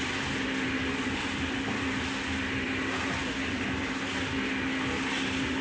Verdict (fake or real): real